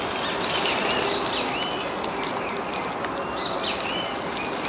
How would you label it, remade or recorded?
recorded